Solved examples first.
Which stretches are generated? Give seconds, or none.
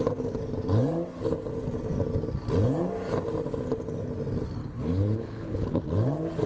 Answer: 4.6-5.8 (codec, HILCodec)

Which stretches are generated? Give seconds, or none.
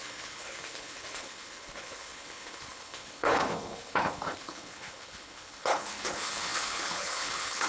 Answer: 0.0-7.7 (codec, HILCodec)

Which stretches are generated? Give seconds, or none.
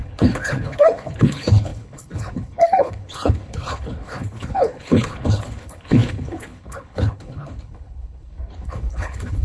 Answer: 0.0-9.4 (codec, HILCodec)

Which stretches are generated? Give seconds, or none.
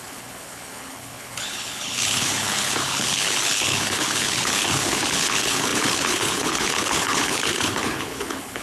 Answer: 0.0-8.6 (codec, HILCodec)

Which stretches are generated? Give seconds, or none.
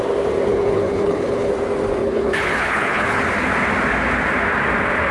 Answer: 0.5-1.5 (codec, HILCodec); 2.0-3.2